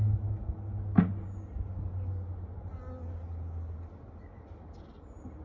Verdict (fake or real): real